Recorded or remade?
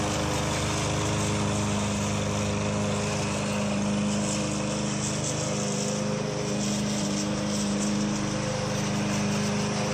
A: recorded